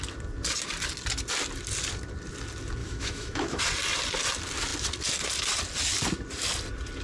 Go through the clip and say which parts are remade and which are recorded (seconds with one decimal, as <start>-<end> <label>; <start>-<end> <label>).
0.0-2.8 recorded; 2.8-3.6 remade; 3.6-7.0 recorded